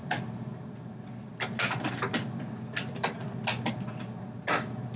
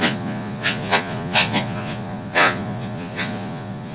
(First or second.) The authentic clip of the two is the first